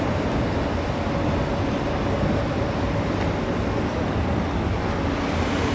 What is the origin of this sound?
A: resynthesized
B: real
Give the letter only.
B